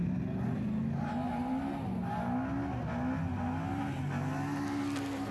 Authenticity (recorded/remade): recorded